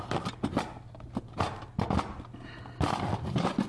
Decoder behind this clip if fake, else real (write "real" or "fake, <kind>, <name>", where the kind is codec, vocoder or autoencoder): real